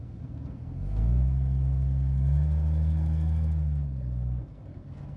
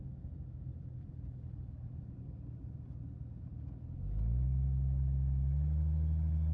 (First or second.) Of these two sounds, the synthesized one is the first